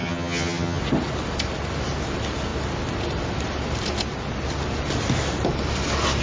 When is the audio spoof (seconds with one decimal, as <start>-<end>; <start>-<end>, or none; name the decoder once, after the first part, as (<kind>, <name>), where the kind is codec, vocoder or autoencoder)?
0.0-0.8 (vocoder, HiFi-GAN)